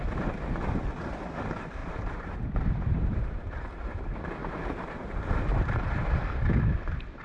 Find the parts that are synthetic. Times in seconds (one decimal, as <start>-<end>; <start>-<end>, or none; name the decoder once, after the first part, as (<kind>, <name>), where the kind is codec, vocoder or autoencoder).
1.8-4.0 (vocoder, BigVGAN v2); 4.4-6.0